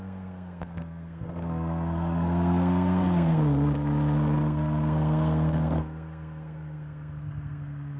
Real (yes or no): no